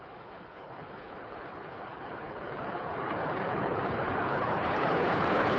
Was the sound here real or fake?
fake